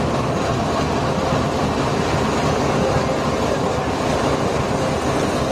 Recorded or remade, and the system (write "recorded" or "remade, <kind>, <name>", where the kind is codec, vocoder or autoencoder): recorded